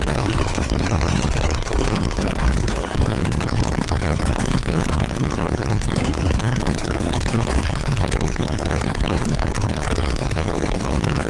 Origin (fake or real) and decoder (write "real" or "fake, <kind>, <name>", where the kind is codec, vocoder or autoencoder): fake, codec, SNAC